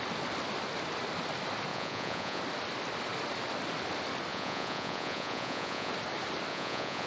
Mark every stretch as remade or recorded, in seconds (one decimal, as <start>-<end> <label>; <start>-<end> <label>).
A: 0.0-1.7 recorded; 1.7-2.4 remade; 2.4-4.3 recorded; 4.3-5.9 remade; 5.9-6.5 recorded; 6.5-7.1 remade